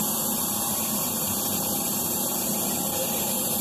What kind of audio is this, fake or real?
fake